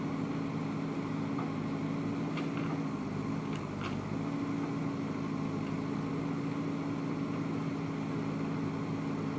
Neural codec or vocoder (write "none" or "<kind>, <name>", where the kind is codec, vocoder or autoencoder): none